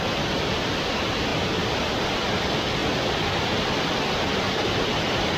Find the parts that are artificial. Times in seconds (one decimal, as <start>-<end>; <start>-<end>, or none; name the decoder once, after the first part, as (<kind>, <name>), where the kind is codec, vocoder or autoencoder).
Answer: none